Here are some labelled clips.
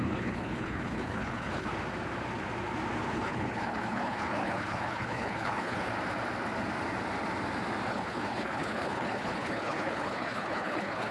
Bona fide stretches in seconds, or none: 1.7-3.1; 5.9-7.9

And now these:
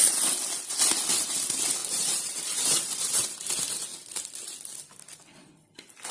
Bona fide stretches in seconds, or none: 0.0-1.8; 3.3-6.1

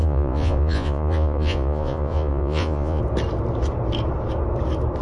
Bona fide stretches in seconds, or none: 3.0-5.0